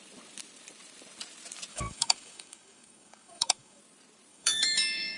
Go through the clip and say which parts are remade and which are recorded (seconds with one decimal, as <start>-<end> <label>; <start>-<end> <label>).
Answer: 0.0-1.7 recorded; 1.7-3.8 remade; 3.8-4.3 recorded; 4.3-5.2 remade